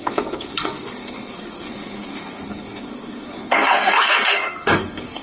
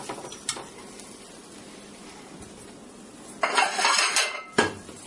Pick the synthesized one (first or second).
first